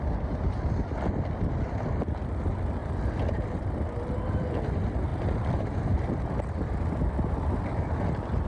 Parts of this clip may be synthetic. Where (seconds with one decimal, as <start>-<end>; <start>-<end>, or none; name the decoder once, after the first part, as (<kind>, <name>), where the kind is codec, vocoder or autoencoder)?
2.8-3.3 (vocoder, BigVGAN v2); 5.1-6.6